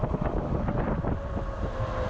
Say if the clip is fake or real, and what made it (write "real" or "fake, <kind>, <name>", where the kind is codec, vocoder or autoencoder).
real